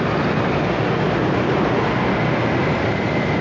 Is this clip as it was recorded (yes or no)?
yes